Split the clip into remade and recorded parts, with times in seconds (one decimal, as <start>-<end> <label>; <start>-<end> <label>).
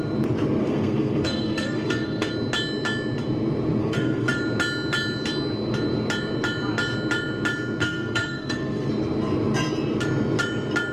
0.0-0.6 recorded; 0.6-2.3 remade; 2.3-3.8 recorded; 3.8-4.4 remade; 4.4-7.8 recorded; 7.8-8.9 remade; 8.9-10.9 recorded